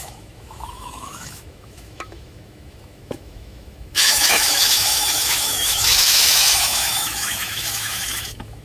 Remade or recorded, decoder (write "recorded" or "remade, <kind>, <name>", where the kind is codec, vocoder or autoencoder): remade, autoencoder, DAC-VAE